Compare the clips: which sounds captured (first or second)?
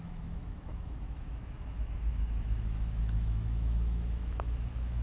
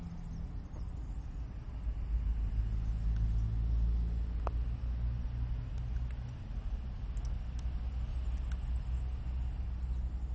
second